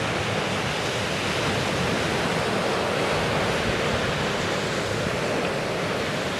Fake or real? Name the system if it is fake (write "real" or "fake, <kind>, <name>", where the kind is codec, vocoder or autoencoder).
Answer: real